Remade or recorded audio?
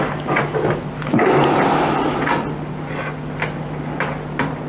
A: recorded